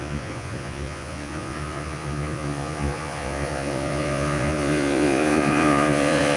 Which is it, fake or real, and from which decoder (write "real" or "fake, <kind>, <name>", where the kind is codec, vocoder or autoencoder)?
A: fake, vocoder, Vocos